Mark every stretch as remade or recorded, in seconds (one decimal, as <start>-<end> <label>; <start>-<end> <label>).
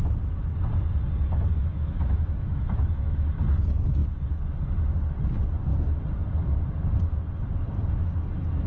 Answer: 0.0-1.6 recorded; 1.6-3.4 remade; 3.4-8.7 recorded